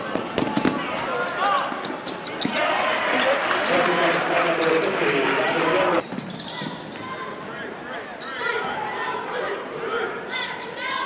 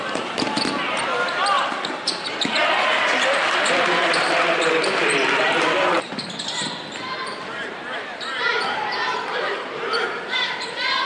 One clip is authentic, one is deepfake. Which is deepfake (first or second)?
second